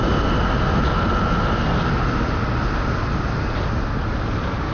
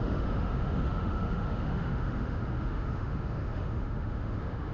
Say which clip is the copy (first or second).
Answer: second